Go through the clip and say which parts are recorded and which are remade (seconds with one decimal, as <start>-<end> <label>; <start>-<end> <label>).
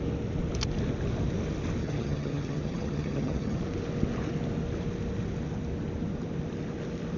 0.0-1.8 recorded; 1.8-3.6 remade; 3.6-7.2 recorded